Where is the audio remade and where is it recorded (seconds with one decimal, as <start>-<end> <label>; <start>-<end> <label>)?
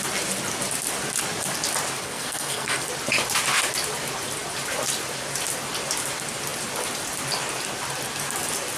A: 0.0-2.0 recorded; 2.0-2.9 remade; 2.9-8.8 recorded